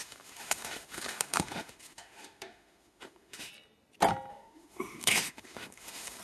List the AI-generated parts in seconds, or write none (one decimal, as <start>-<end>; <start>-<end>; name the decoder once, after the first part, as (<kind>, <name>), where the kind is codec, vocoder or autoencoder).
0.0-3.5 (autoencoder, DAC-VAE); 4.3-6.2